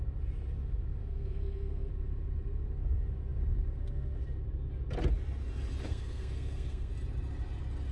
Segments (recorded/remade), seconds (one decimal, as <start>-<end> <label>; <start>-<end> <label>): 0.0-1.0 recorded; 1.0-1.9 remade; 1.9-5.9 recorded; 5.9-6.9 remade; 6.9-7.9 recorded